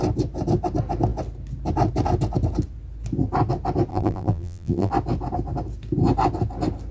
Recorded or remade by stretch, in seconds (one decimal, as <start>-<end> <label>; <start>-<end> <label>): 0.0-3.9 recorded; 3.9-4.9 remade; 4.9-6.9 recorded